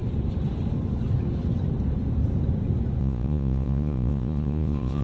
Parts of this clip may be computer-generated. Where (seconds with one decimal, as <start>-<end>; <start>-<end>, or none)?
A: 3.0-5.0

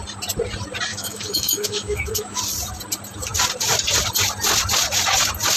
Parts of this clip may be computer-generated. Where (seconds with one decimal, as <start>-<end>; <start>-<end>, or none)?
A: 0.9-2.4

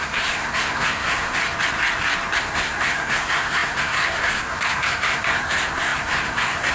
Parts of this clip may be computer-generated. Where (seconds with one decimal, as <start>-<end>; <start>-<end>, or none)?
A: 0.0-1.4; 2.4-6.7

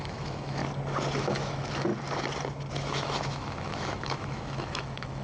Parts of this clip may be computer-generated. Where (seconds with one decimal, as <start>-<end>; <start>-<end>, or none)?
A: 0.0-0.6; 1.2-1.9; 2.7-5.2

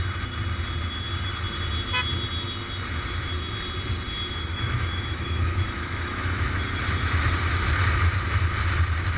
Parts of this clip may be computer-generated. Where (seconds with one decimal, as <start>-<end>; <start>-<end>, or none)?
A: 4.5-6.6

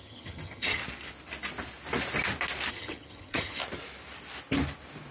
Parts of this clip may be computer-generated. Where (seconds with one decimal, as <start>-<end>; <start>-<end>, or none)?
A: 0.0-0.8; 2.7-3.6